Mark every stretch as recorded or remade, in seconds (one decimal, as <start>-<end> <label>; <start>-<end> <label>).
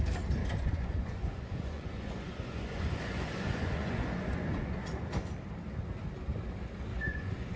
0.0-0.4 recorded; 0.4-5.0 remade; 5.0-6.9 recorded; 6.9-7.6 remade